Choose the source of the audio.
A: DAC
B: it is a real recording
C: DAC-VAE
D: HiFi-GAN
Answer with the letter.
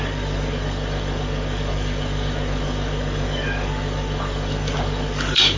A